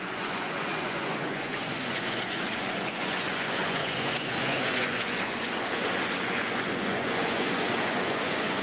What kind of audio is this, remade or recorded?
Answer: remade